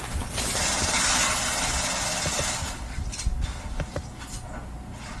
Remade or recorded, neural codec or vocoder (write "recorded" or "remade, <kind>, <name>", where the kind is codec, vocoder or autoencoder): recorded